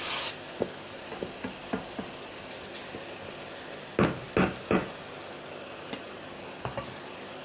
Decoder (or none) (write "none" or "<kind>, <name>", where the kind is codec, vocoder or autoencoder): none